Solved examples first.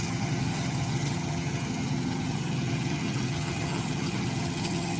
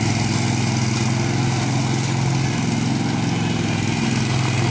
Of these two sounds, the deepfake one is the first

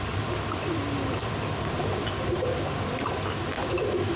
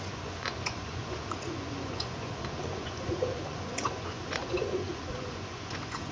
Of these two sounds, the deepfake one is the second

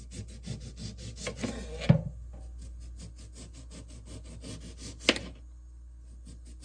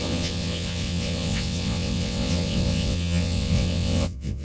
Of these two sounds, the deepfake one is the second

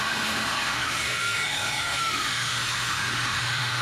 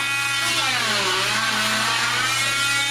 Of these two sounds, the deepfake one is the first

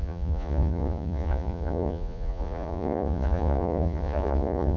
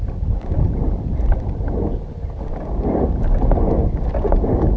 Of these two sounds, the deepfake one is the first